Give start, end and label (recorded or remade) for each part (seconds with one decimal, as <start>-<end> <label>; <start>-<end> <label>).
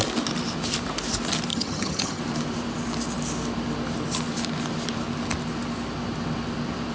0.0-1.5 recorded; 1.5-2.2 remade; 2.2-6.9 recorded